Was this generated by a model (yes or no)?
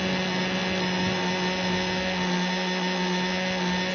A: no